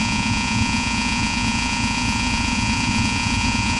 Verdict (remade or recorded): remade